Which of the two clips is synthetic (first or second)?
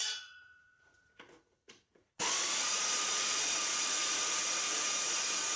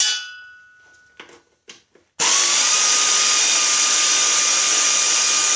first